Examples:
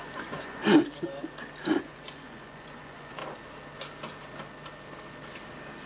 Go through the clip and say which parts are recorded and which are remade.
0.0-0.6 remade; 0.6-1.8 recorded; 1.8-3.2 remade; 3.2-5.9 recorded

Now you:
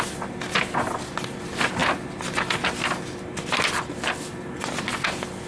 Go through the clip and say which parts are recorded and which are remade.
0.0-5.5 recorded

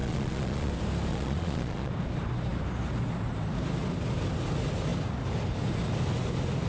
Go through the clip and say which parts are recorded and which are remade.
0.0-0.7 remade; 0.7-1.1 recorded; 1.1-1.9 remade; 1.9-6.7 recorded

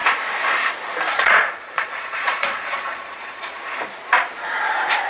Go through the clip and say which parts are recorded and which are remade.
0.0-1.1 recorded; 1.1-3.6 remade; 3.6-5.1 recorded